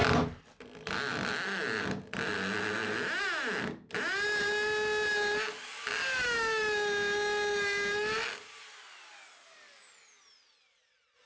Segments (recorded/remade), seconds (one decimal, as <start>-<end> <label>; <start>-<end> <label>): 0.0-11.3 recorded